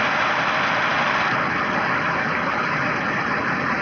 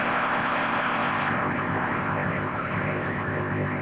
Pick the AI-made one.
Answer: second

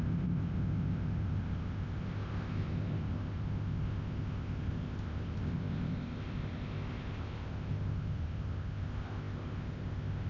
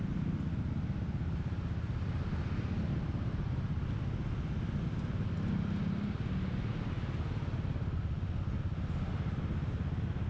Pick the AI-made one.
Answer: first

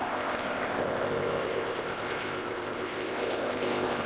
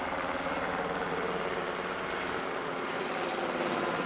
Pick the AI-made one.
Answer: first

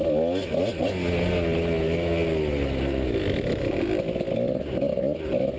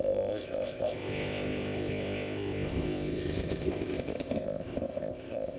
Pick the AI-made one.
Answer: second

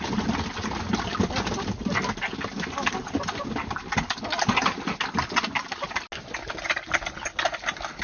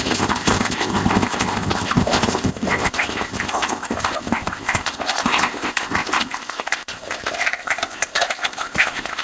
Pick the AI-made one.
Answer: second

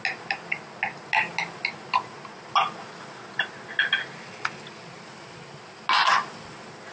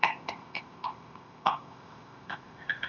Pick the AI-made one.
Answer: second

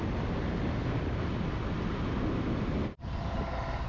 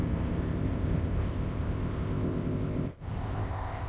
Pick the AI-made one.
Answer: second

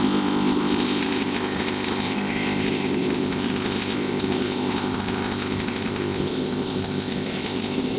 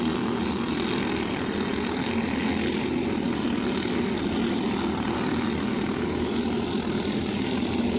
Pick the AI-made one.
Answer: first